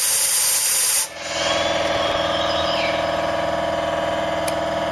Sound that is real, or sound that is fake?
real